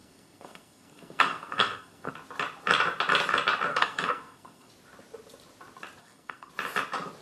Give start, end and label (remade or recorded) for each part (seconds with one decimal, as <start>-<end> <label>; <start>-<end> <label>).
0.0-2.1 remade; 2.1-3.7 recorded; 3.7-4.7 remade; 4.7-6.0 recorded; 6.0-6.5 remade; 6.5-7.2 recorded